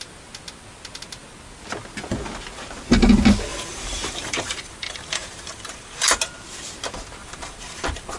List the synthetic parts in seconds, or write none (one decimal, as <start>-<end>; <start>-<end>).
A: 3.5-6.2; 7.2-8.2